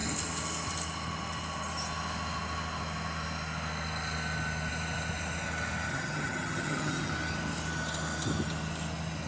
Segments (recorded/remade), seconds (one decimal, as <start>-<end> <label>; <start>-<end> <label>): 0.0-5.9 recorded; 5.9-7.1 remade; 7.1-9.3 recorded